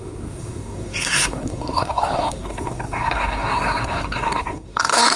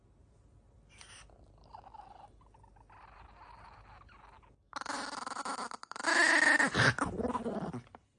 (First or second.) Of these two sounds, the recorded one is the second